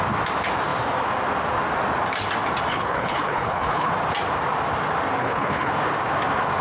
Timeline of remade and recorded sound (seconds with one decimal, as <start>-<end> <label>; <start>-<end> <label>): 0.0-2.7 recorded; 2.7-3.9 remade; 3.9-5.2 recorded; 5.2-5.7 remade; 5.7-6.6 recorded